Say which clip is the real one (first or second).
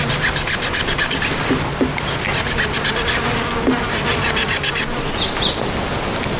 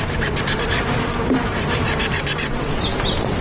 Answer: first